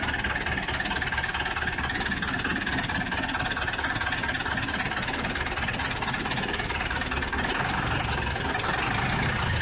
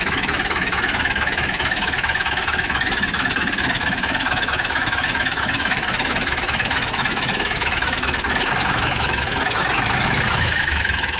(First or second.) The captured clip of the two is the first